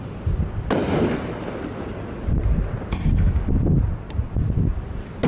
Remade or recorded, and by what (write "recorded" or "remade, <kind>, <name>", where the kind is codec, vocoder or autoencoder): recorded